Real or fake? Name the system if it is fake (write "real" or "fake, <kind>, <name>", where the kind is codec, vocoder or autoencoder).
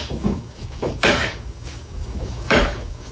fake, codec, DAC